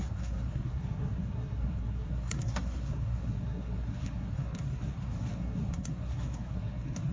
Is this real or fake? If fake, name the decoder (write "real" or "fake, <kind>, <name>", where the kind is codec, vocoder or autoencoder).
fake, codec, SNAC